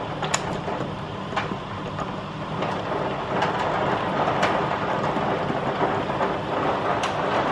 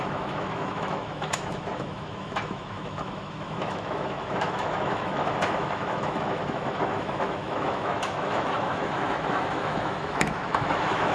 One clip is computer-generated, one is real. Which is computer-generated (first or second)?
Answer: second